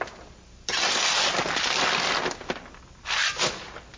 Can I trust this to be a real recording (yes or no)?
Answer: yes